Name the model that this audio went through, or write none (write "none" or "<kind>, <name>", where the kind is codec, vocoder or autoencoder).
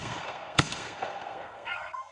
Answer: codec, SNAC